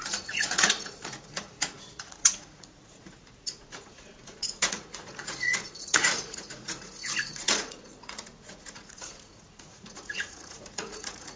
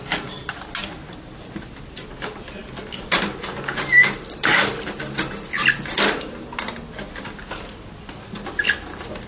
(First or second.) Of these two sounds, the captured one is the second